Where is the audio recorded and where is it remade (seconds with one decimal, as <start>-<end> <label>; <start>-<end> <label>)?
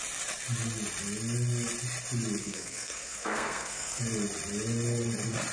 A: 0.0-2.4 recorded; 2.4-4.0 remade; 4.0-5.5 recorded